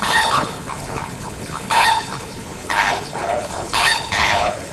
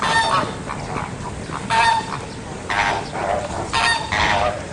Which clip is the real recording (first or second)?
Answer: second